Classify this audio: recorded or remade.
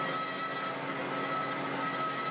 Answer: recorded